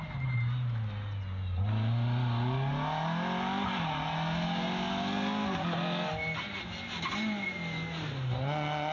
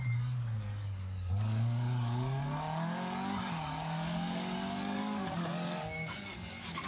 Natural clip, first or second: first